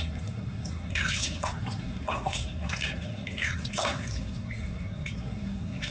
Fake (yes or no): yes